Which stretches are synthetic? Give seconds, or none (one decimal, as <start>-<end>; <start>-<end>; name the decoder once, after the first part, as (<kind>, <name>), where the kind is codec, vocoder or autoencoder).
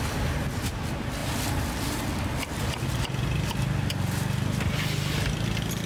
none